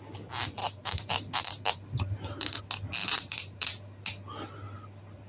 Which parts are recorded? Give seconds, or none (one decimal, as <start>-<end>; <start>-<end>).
0.0-0.6; 2.6-3.0; 3.7-5.3